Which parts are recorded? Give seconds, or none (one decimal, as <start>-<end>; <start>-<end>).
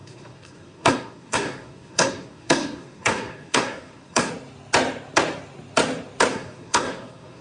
4.3-6.3